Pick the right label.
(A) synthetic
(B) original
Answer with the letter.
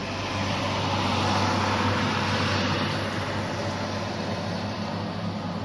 B